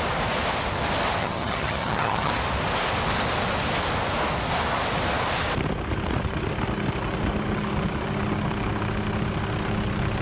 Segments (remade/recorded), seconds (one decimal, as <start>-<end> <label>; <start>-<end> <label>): 0.0-1.2 recorded; 1.2-2.3 remade; 2.3-10.2 recorded